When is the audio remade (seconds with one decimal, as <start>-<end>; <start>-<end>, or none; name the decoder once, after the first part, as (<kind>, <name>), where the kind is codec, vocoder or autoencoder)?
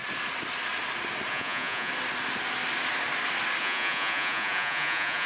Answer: 1.3-1.9 (vocoder, Vocos); 3.6-5.3